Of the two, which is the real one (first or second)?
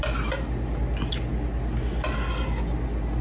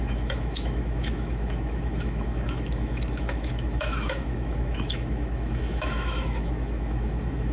first